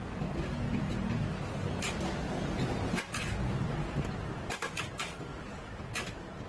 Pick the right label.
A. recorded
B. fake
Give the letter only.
A